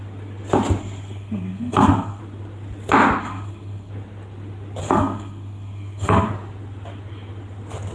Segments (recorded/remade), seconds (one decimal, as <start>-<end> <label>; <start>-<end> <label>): 0.0-0.8 recorded; 0.8-2.2 remade; 2.2-3.2 recorded; 3.2-3.9 remade; 3.9-4.8 recorded; 4.8-6.3 remade; 6.3-7.9 recorded